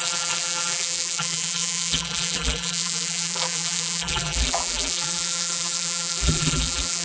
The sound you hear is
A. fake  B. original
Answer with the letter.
A